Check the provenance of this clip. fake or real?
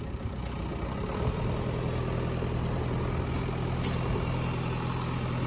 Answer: real